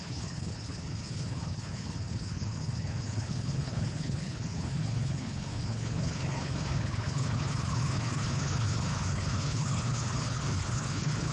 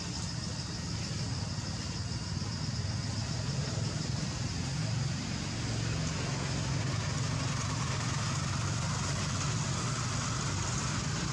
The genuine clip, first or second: second